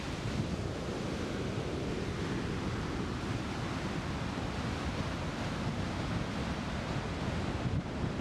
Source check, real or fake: real